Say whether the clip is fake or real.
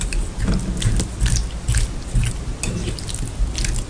real